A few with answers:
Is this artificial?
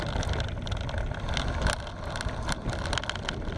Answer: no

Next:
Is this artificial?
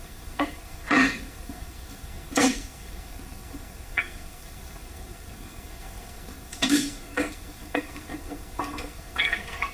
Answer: yes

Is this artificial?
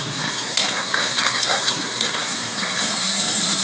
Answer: yes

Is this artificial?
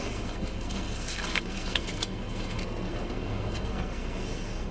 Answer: yes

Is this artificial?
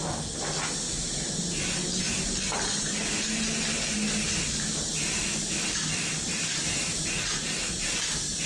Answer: no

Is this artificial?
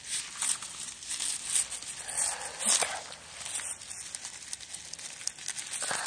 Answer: no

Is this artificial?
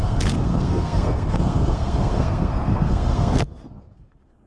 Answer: yes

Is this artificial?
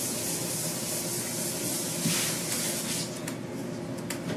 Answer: no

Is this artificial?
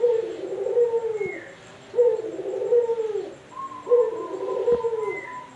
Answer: no